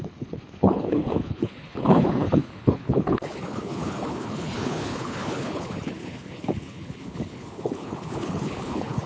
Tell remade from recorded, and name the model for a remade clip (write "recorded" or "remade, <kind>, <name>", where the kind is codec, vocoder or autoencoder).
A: remade, codec, HILCodec